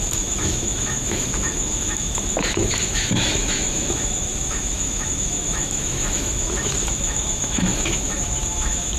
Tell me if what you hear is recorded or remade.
remade